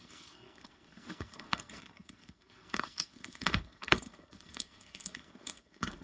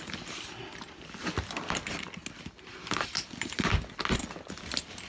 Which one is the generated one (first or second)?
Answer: first